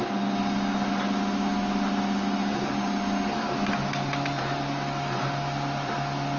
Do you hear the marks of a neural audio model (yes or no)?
no